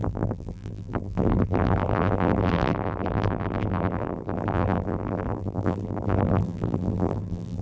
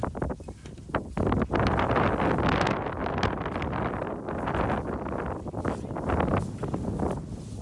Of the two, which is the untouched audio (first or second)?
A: second